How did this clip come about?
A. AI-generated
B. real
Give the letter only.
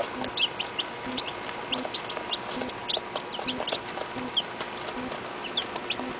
B